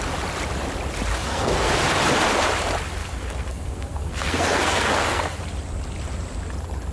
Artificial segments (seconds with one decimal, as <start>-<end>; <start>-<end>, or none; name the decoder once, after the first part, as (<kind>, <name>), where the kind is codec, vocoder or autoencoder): 1.2-1.7 (codec, SNAC); 3.0-5.4